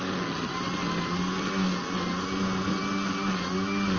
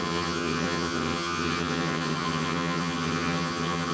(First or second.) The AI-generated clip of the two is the second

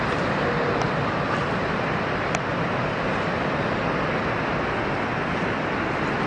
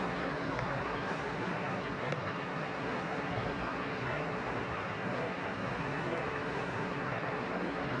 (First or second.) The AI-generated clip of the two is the second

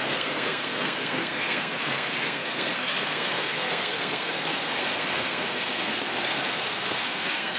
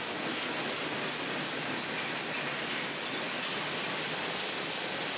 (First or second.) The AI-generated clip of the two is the first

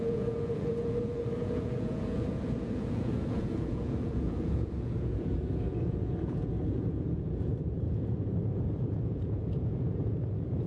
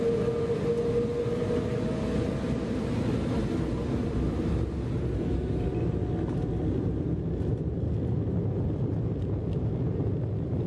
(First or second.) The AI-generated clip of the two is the first